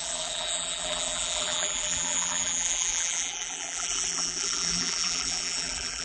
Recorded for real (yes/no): no